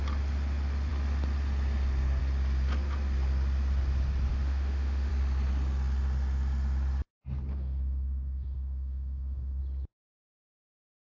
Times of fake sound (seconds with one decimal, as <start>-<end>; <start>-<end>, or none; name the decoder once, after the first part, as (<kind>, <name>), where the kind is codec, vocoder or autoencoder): 4.3-5.1 (autoencoder, DAC-VAE); 7.5-9.6